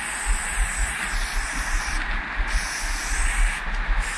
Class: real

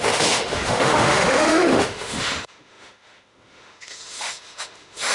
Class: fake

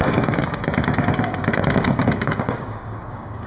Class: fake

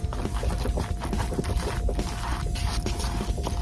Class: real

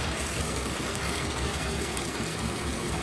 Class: fake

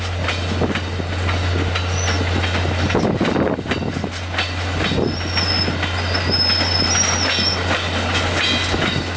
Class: real